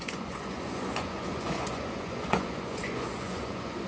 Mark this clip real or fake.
fake